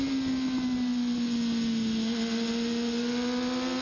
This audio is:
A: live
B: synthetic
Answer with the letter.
A